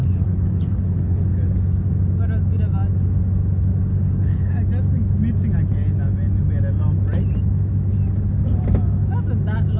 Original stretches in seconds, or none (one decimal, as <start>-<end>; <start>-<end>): 1.2-3.9; 4.5-9.8